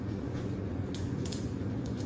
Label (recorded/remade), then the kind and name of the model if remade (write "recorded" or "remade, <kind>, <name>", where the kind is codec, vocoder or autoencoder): remade, vocoder, Vocos